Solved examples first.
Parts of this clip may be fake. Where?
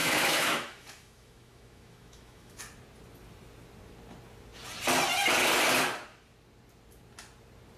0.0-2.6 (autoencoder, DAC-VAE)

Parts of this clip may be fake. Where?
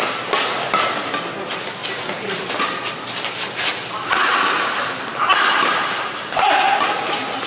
none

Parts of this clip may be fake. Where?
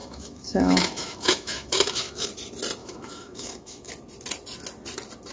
0.0-2.3 (autoencoder, DAC-VAE); 2.8-3.9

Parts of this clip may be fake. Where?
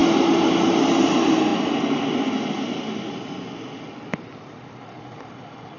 none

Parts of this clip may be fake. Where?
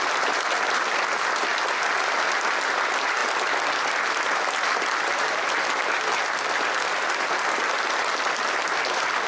none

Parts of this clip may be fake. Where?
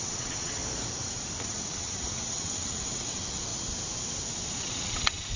0.0-0.6 (vocoder, WaveNeXt); 1.4-3.5; 4.6-5.4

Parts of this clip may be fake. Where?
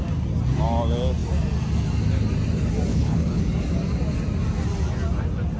2.9-3.4 (codec, HILCodec)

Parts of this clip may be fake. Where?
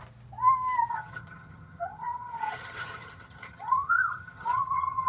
0.9-5.1 (vocoder, HiFi-GAN)